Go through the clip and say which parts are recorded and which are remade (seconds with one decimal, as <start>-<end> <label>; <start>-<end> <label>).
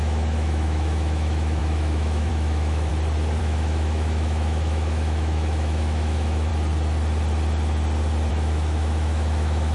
0.0-2.9 remade; 2.9-3.4 recorded; 3.4-6.5 remade; 6.5-8.3 recorded; 8.3-9.7 remade